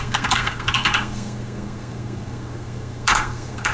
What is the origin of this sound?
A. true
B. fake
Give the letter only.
B